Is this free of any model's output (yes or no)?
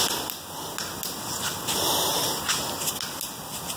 yes